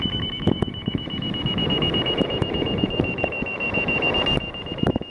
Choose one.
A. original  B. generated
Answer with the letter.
B